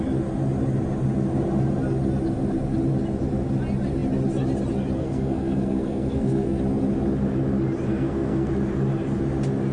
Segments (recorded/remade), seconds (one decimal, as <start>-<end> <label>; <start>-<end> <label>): 0.0-5.0 recorded; 5.0-6.6 remade; 6.6-7.9 recorded; 7.9-8.5 remade; 8.5-9.7 recorded